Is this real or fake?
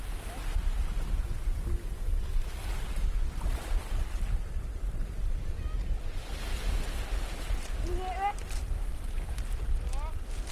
real